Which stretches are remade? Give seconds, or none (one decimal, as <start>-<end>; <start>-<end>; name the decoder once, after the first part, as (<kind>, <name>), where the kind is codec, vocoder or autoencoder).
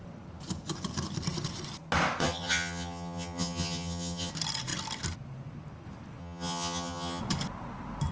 2.2-4.3 (vocoder, HiFi-GAN); 6.2-7.2